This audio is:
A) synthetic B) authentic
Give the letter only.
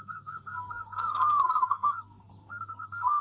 A